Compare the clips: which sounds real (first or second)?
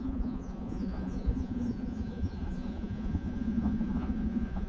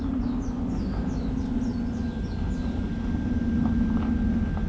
second